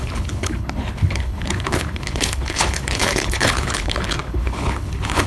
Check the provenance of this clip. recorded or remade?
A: remade